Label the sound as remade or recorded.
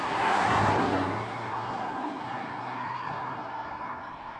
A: remade